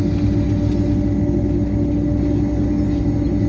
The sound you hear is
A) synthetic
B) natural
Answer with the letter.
B